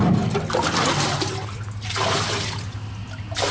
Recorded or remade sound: recorded